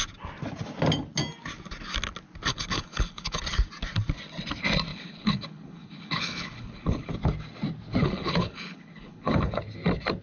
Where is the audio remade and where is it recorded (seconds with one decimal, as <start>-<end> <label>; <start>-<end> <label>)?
0.0-2.5 recorded; 2.5-3.4 remade; 3.4-4.9 recorded; 4.9-7.1 remade; 7.1-8.0 recorded; 8.0-9.6 remade; 9.6-10.2 recorded